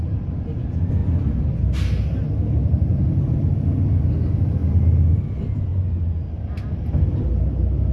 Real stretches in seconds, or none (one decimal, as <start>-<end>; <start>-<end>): 0.0-2.9; 3.5-7.9